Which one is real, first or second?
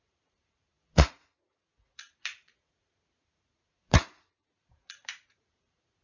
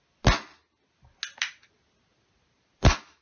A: second